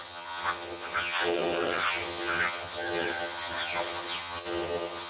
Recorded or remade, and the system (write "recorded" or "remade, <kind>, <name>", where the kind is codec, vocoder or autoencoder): remade, vocoder, HiFi-GAN